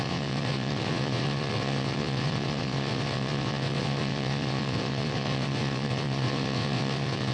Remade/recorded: remade